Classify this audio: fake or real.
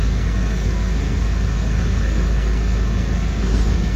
fake